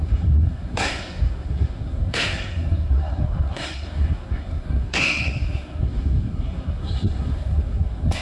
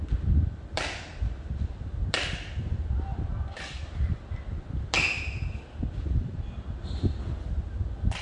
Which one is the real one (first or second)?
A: second